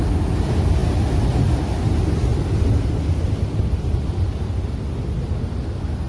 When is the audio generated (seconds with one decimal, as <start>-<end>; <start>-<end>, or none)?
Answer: none